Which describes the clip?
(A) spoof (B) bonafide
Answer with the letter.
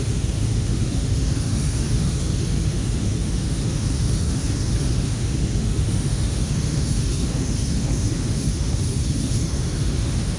A